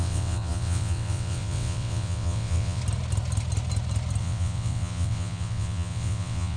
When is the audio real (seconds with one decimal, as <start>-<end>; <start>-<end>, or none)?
2.8-4.2